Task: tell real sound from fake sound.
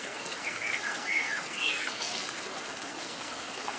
fake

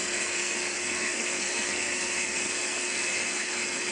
fake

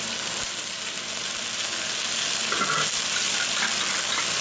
real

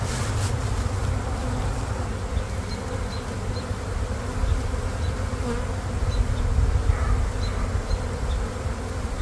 real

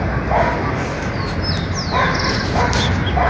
real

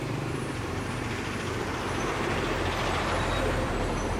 fake